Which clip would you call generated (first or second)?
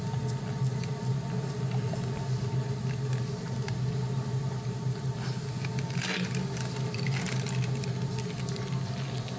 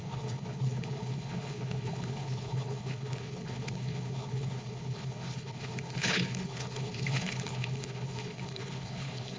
second